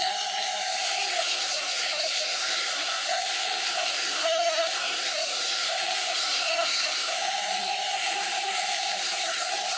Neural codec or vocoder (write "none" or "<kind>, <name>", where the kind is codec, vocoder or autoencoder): codec, SNAC